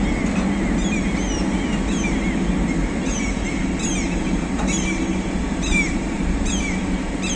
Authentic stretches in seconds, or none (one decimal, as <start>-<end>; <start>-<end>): 0.0-2.8